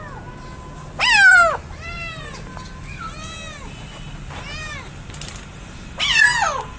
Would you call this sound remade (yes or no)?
no